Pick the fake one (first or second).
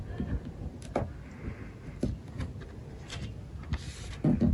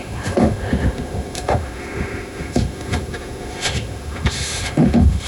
second